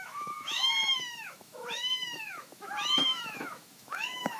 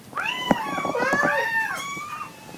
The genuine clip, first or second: second